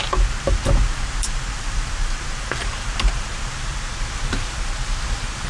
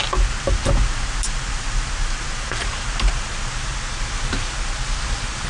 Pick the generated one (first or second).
first